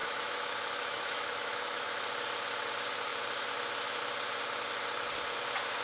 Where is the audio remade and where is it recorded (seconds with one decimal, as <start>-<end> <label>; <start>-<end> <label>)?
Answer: 0.0-1.9 remade; 1.9-5.8 recorded